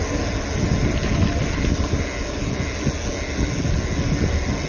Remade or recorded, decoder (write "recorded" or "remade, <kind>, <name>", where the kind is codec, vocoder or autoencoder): recorded